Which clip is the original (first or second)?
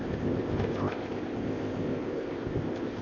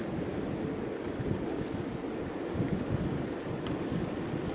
second